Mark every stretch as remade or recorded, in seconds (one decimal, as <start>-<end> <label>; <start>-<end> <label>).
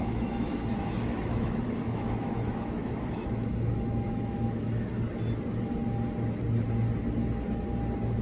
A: 0.0-4.9 remade; 4.9-8.2 recorded